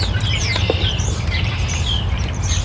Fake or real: fake